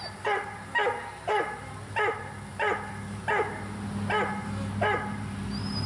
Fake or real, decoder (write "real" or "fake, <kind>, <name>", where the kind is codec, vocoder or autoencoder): real